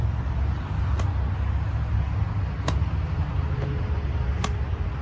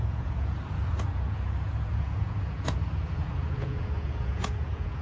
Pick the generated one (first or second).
second